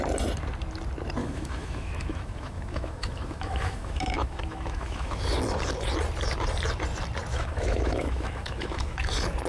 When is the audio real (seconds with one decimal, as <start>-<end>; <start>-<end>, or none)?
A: 0.0-1.2; 5.2-7.3; 9.1-9.5